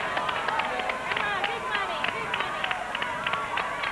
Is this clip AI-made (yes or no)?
no